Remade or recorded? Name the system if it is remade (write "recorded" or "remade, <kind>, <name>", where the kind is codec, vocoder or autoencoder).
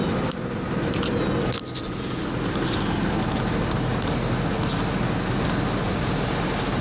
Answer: recorded